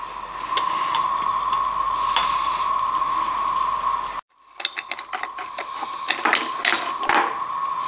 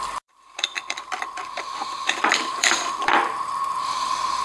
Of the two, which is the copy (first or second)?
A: second